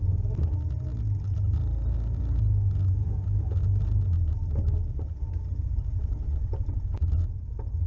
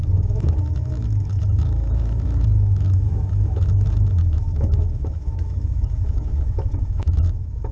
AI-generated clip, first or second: second